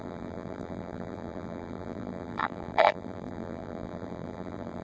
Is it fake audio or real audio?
fake